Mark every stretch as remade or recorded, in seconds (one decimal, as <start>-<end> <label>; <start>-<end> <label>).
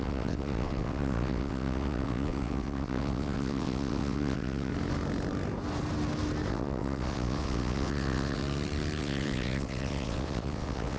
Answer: 0.0-4.7 remade; 4.7-6.5 recorded; 6.5-8.4 remade; 8.4-9.0 recorded; 9.0-11.0 remade